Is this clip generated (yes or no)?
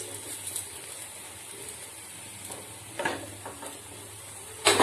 no